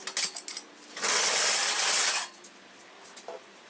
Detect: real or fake real